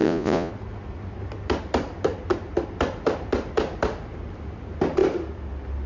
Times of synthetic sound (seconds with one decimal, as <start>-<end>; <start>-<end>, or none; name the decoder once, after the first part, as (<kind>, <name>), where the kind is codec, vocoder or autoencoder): 0.0-0.5 (vocoder, Vocos)